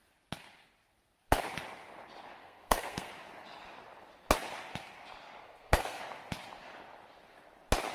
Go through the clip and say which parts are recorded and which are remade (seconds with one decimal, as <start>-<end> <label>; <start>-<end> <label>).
0.0-2.4 recorded; 2.4-3.1 remade; 3.1-5.4 recorded; 5.4-6.0 remade; 6.0-7.9 recorded